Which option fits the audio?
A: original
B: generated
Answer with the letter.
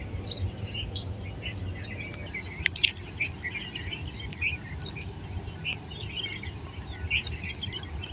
A